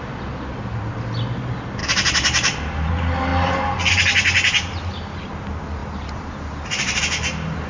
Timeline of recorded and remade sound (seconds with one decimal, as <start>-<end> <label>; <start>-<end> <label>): 0.0-1.8 recorded; 1.8-2.9 remade; 2.9-5.8 recorded; 5.8-7.0 remade; 7.0-7.7 recorded